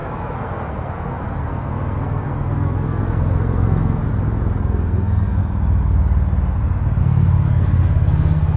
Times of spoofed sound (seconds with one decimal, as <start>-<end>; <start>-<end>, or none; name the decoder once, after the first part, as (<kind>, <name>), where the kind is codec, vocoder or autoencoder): 0.0-4.0 (codec, SNAC); 4.6-5.4; 7.0-8.6